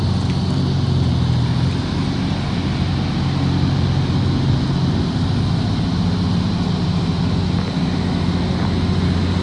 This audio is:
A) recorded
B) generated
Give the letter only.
A